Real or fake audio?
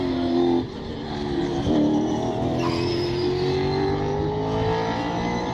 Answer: real